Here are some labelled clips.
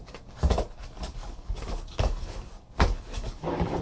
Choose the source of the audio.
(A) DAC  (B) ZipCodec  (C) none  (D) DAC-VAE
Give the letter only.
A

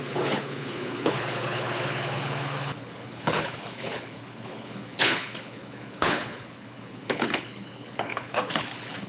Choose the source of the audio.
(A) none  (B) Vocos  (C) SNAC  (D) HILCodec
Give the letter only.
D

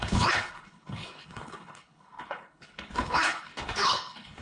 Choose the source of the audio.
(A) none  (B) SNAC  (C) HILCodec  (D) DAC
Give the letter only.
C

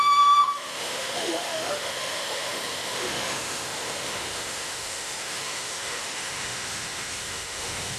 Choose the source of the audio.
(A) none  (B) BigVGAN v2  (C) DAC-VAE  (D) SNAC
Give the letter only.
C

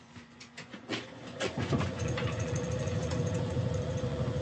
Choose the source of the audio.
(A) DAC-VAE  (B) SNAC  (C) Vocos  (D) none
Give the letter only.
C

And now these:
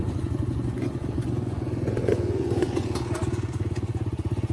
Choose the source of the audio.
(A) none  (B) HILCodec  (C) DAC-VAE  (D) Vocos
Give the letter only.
D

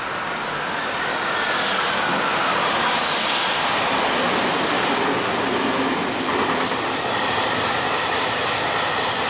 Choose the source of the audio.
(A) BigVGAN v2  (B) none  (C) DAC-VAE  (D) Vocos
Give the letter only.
B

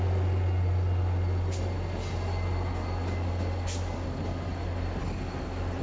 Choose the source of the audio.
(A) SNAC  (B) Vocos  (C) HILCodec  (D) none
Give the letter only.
D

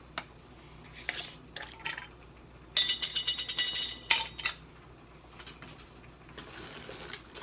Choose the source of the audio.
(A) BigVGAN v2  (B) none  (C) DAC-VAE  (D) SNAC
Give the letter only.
B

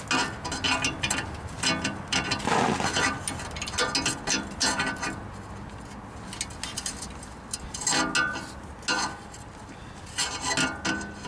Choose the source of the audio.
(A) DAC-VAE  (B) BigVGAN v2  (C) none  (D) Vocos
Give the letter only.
C